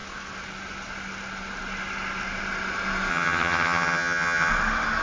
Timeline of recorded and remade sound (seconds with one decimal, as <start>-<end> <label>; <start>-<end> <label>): 0.0-3.1 recorded; 3.1-4.5 remade; 4.5-5.0 recorded